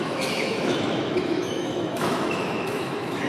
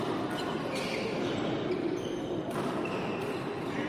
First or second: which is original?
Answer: second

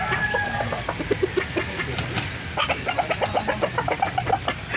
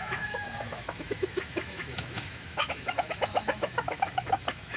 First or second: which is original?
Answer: first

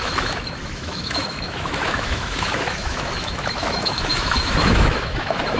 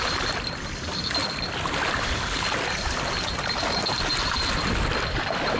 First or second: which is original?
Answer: second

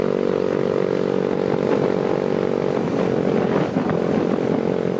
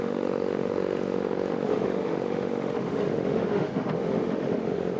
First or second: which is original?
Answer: first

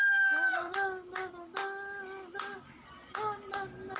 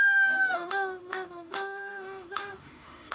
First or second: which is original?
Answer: first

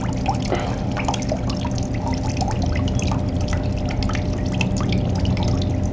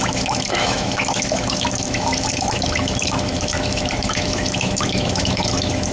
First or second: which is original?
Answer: first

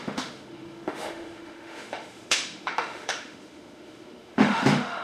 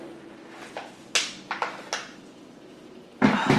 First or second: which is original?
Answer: second